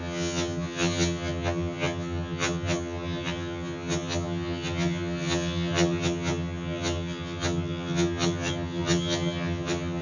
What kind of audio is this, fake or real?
fake